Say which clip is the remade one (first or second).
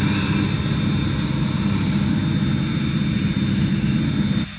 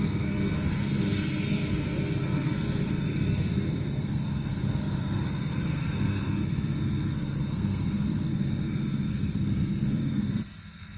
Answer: second